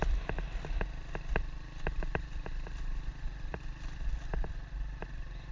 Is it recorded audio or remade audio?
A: recorded